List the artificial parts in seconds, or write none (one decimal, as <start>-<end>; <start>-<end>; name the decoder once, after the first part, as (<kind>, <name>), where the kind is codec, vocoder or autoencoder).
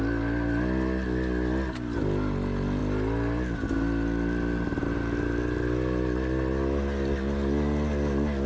none